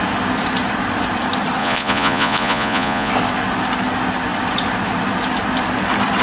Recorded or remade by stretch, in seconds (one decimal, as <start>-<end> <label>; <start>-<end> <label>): 0.0-1.6 recorded; 1.6-3.1 remade; 3.1-6.2 recorded